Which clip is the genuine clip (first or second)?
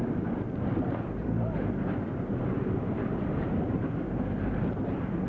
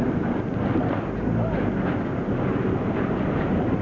second